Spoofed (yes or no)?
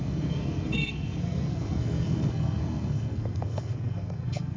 yes